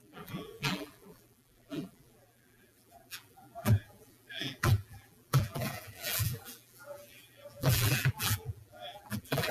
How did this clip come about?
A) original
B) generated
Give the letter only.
B